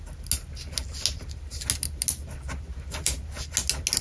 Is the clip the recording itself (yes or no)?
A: yes